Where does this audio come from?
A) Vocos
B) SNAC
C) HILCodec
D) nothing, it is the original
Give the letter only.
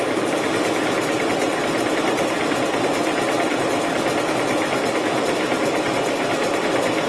D